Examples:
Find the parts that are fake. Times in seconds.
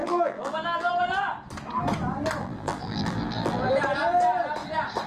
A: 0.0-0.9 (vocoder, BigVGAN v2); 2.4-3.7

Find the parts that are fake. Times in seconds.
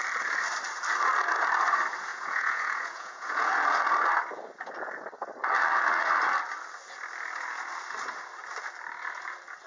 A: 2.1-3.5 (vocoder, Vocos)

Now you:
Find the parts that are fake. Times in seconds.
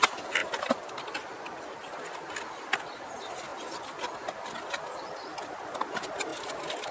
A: none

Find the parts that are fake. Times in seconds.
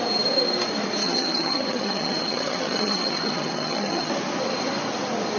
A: 1.0-4.1 (vocoder, HiFi-GAN)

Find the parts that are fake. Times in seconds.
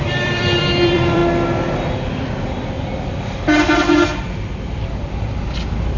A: 0.0-1.2 (vocoder, BigVGAN v2); 4.7-6.0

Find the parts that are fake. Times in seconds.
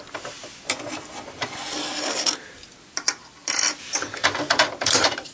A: none